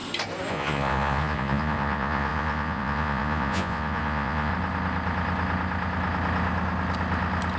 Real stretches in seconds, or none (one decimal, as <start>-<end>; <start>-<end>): 0.0-0.5; 4.5-7.6